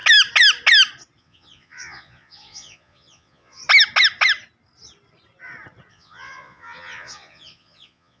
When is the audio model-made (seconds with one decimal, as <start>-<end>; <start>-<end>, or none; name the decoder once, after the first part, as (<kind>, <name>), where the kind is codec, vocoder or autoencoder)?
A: 1.2-3.6 (vocoder, Vocos); 5.9-8.2